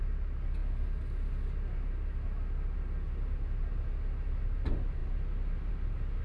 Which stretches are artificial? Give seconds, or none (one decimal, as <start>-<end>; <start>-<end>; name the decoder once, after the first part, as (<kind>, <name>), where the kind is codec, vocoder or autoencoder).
none